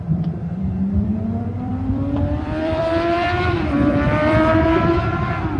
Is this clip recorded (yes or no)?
no